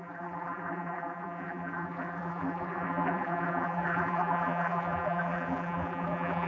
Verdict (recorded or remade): remade